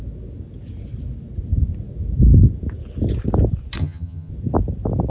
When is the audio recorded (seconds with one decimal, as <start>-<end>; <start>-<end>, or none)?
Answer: 0.0-3.8; 4.3-5.1